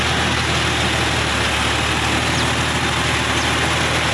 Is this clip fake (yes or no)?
no